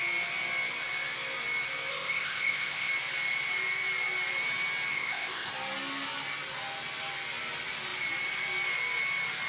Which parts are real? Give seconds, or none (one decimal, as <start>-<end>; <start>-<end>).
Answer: 0.0-1.9; 2.9-4.9; 5.5-9.5